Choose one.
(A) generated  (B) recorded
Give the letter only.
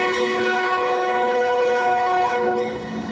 A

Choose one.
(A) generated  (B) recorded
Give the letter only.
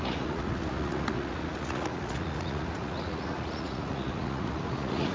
A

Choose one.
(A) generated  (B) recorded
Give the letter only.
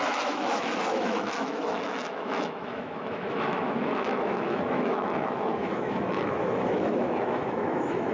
A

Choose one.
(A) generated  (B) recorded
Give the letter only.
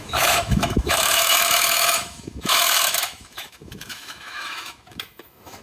A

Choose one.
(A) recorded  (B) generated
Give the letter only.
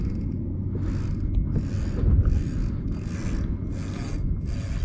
A